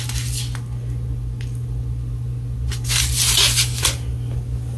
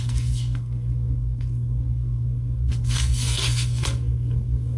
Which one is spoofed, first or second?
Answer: second